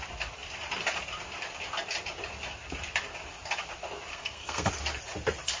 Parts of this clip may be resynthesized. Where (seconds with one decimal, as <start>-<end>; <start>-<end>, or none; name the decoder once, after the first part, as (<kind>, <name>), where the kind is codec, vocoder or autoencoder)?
4.1-4.7 (codec, SNAC)